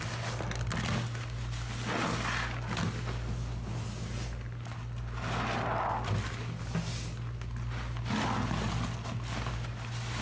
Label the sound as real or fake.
real